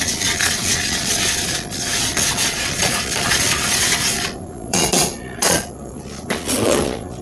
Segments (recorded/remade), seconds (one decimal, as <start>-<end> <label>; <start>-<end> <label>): 0.0-7.2 remade